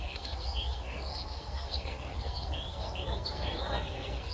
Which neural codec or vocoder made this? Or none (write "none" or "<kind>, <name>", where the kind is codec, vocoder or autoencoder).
codec, SNAC